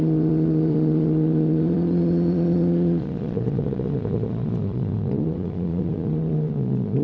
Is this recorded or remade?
remade